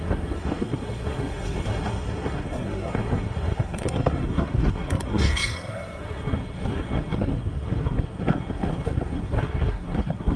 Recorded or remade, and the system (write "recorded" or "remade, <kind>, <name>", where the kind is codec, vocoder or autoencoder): remade, codec, SNAC